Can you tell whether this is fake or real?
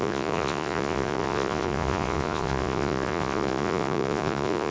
fake